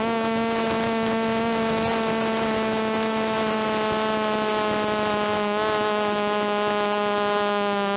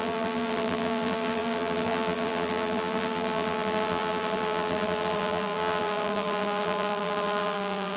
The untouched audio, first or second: first